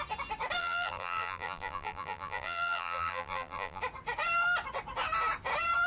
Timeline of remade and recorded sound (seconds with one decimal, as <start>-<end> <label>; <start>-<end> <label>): 0.0-0.6 recorded; 0.6-3.8 remade; 3.8-5.9 recorded

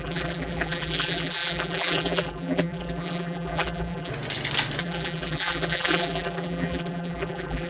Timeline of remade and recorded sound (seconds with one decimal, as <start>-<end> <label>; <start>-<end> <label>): 0.0-4.1 remade; 4.1-4.8 recorded; 4.8-7.7 remade

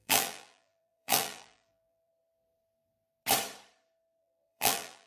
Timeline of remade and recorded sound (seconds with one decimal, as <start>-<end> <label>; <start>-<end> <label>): 0.0-2.1 remade; 2.1-4.2 recorded; 4.2-5.1 remade

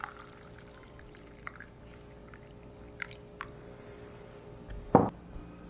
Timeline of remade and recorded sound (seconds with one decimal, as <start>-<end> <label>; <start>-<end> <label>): 0.0-0.8 recorded; 0.8-1.8 remade; 1.8-5.7 recorded